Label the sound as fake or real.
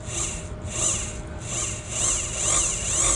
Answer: real